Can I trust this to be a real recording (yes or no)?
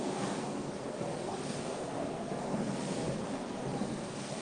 no